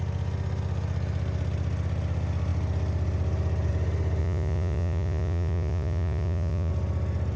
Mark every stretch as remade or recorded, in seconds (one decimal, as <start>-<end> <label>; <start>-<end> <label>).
0.0-4.2 recorded; 4.2-6.7 remade; 6.7-7.4 recorded